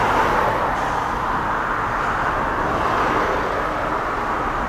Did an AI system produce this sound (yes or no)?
no